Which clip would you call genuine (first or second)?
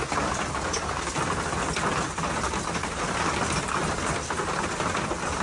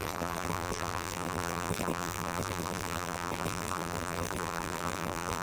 first